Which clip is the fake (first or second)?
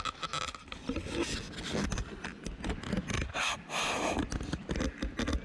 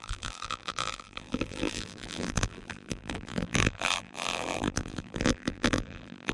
second